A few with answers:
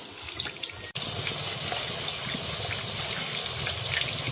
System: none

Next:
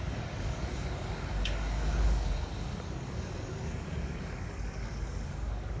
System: codec, DAC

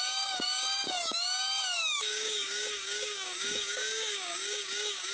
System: codec, DAC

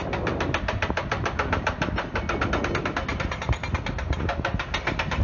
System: none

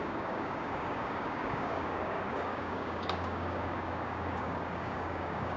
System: codec, DAC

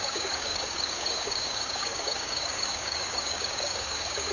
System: codec, DAC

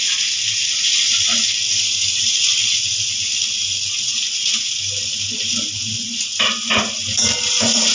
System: none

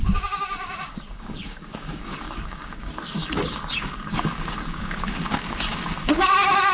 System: codec, DAC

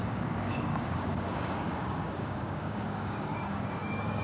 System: codec, DAC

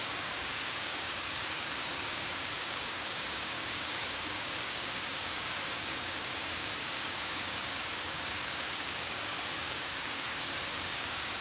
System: codec, DAC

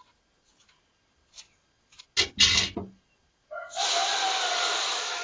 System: none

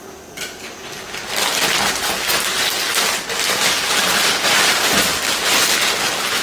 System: none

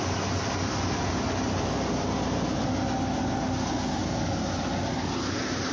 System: none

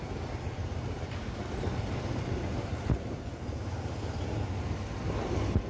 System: none